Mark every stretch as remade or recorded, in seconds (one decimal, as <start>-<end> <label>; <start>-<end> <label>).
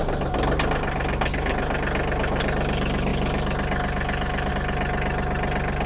0.0-5.9 recorded